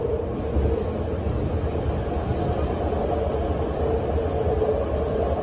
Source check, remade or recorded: recorded